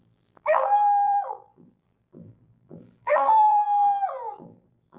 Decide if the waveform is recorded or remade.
remade